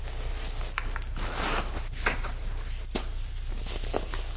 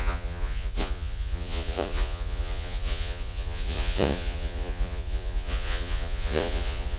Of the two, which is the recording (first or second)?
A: first